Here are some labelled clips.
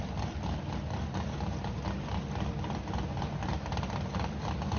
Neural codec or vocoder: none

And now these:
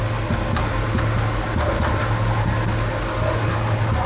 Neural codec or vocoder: none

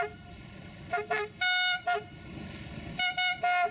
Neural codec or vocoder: none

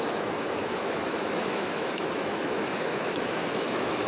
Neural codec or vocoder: autoencoder, DAC-VAE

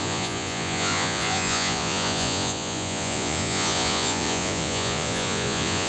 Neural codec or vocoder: vocoder, Vocos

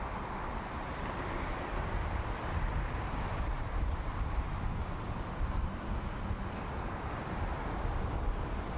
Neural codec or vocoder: none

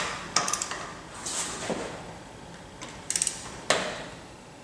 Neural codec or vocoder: none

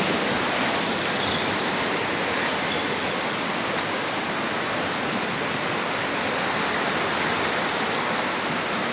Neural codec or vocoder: none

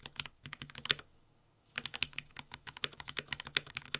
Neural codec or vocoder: autoencoder, DAC-VAE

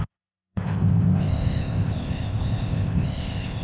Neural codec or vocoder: codec, ZipCodec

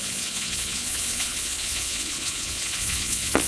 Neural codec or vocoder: vocoder, Vocos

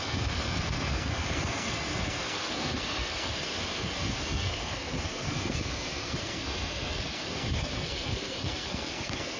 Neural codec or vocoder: codec, SNAC